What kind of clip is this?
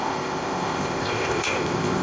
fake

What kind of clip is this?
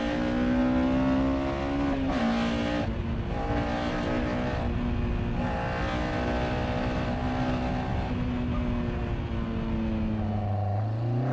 real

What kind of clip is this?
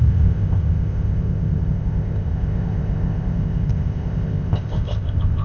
fake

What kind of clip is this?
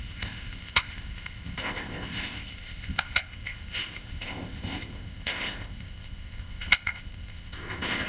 fake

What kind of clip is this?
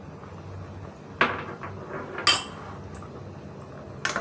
real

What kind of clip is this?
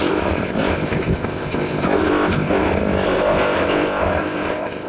fake